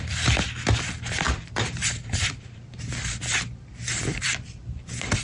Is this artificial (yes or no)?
yes